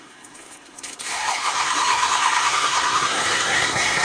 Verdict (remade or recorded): remade